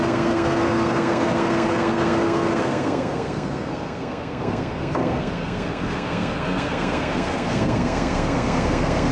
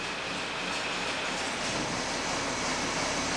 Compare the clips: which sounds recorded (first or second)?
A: second